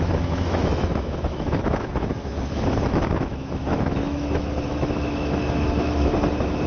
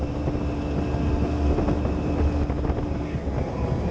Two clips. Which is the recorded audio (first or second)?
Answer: second